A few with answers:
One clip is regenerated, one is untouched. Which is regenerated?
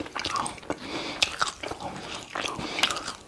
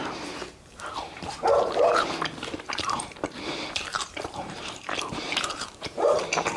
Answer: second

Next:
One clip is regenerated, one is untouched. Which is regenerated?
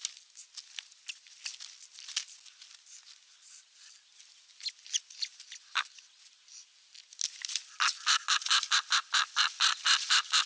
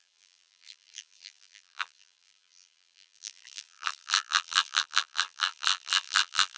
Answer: second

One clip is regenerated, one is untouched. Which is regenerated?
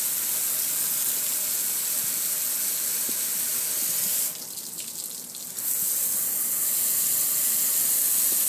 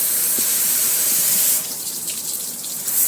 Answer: second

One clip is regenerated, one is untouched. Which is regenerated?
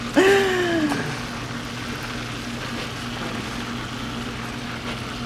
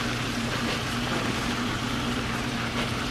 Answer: second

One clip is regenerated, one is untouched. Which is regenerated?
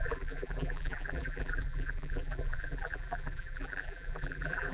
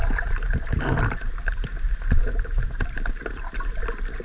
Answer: first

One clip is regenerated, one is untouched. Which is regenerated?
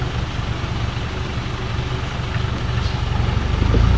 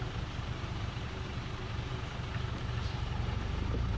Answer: second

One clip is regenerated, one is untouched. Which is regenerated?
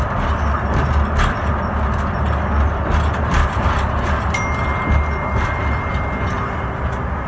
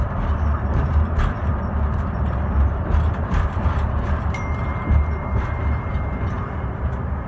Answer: second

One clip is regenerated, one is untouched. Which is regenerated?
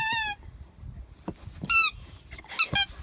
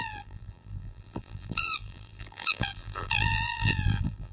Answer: second